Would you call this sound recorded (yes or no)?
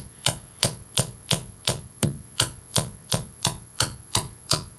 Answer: no